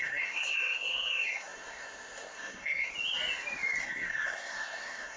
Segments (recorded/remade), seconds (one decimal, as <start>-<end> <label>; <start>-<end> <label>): 0.0-2.9 remade; 2.9-3.8 recorded; 3.8-5.2 remade